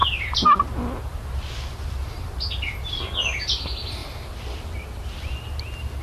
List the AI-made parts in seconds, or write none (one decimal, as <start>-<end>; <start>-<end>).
none